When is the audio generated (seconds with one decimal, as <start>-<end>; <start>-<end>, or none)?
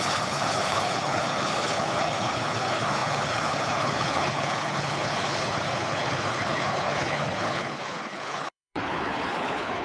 0.0-9.8